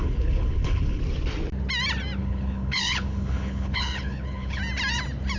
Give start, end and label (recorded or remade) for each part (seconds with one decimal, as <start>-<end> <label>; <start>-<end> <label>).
0.0-1.0 remade; 1.0-2.2 recorded; 2.2-4.6 remade; 4.6-5.4 recorded